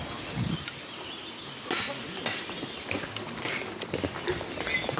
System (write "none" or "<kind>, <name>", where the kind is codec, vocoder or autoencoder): none